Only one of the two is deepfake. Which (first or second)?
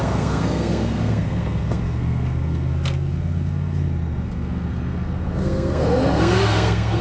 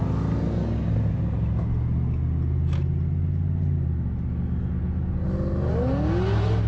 first